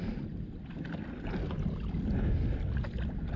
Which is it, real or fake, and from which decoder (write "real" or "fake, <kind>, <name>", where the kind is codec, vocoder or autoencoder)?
real